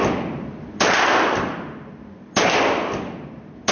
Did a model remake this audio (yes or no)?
no